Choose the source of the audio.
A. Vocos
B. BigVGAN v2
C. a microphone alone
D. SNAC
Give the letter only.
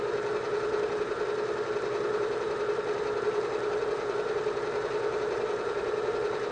C